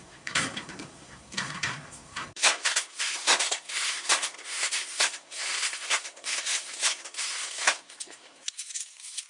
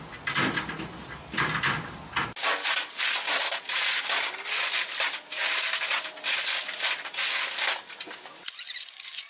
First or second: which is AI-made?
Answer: first